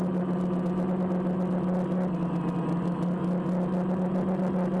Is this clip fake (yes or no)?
no